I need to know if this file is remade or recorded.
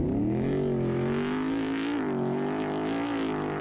recorded